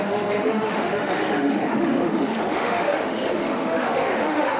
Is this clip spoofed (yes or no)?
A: yes